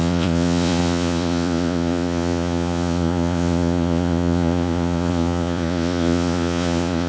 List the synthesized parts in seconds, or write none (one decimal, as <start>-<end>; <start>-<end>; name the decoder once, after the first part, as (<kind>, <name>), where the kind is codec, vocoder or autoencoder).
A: 0.0-7.1 (vocoder, Vocos)